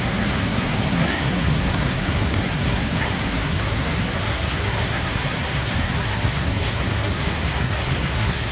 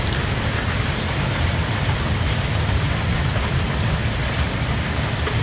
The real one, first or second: second